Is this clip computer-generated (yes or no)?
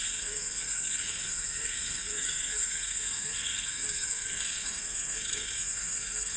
yes